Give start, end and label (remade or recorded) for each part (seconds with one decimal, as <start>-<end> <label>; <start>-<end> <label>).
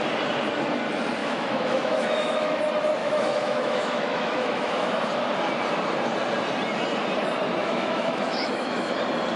0.0-1.2 recorded; 1.2-2.6 remade; 2.6-3.0 recorded; 3.0-5.0 remade; 5.0-7.6 recorded; 7.6-8.9 remade; 8.9-9.4 recorded